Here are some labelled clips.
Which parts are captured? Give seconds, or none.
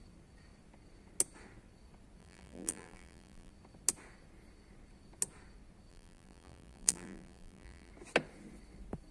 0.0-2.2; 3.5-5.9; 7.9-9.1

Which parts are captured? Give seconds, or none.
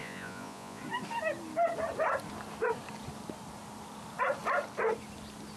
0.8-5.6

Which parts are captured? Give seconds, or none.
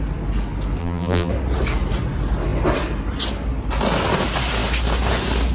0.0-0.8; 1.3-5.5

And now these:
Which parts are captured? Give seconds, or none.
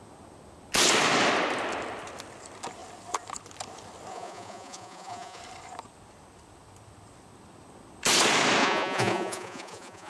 0.0-4.1; 5.4-8.6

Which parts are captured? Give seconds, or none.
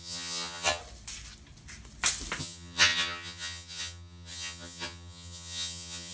0.8-2.4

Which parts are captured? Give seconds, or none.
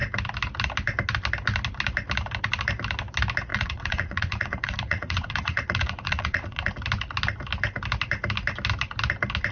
0.0-3.5; 6.7-9.5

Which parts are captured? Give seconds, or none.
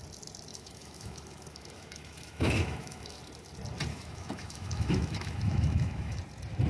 0.0-0.5; 3.2-3.9; 6.2-6.7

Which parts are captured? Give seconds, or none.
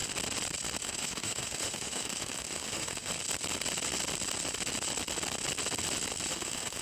0.0-0.8; 3.1-6.3